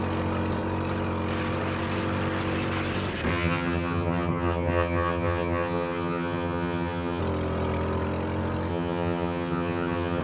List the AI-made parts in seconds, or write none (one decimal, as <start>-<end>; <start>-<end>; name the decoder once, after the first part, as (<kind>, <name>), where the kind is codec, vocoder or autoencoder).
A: 3.3-7.2 (vocoder, HiFi-GAN); 8.7-10.2